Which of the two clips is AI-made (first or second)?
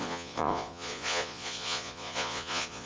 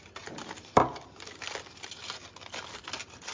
first